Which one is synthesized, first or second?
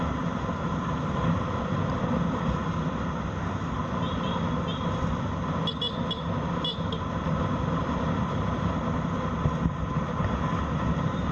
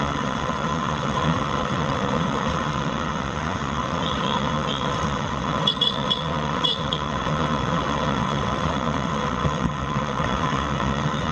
second